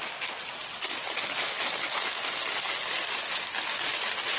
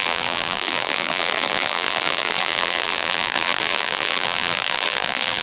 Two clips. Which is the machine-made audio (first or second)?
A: second